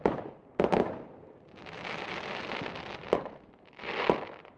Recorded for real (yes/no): yes